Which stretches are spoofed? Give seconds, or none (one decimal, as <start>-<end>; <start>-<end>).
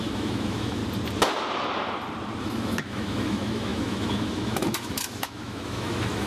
0.0-0.8; 2.4-6.3